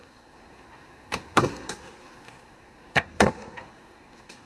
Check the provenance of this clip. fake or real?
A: fake